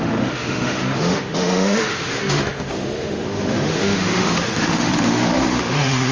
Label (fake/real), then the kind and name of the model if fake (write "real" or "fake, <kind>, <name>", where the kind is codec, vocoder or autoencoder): fake, autoencoder, DAC-VAE